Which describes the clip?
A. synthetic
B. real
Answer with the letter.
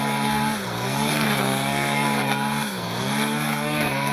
A